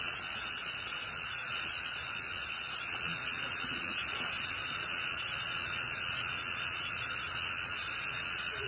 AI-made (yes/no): yes